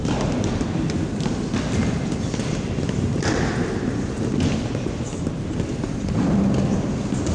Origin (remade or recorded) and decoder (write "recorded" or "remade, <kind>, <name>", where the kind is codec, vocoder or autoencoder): recorded